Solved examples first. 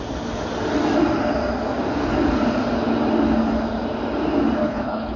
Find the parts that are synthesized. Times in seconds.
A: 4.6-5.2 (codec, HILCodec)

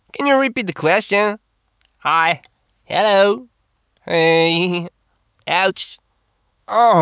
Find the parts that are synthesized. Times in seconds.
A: 0.0-1.9 (autoencoder, DAC-VAE); 5.7-7.0

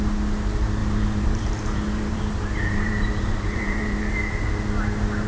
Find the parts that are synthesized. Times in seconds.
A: 0.8-4.0 (vocoder, BigVGAN v2)

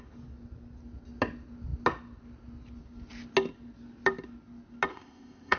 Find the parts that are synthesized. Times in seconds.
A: 4.9-5.6 (codec, ZipCodec)